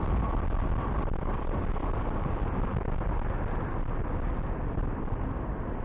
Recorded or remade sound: recorded